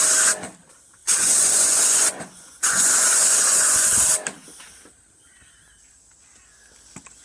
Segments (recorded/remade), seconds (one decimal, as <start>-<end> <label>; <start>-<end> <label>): 0.0-1.0 recorded; 1.0-4.0 remade; 4.0-7.2 recorded